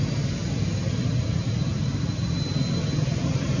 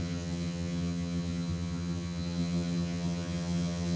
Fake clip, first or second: second